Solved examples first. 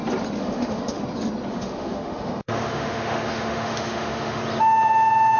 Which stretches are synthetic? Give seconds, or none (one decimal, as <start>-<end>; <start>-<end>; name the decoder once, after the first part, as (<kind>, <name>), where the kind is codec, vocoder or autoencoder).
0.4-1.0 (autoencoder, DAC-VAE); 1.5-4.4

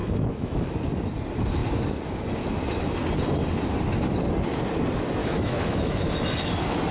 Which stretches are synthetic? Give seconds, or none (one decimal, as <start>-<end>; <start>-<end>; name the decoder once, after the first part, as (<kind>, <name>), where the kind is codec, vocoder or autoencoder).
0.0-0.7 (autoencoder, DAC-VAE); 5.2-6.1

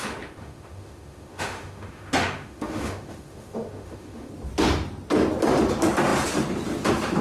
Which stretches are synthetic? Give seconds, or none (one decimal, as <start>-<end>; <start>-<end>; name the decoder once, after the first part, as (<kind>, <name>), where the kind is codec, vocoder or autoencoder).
0.0-4.3 (autoencoder, DAC-VAE)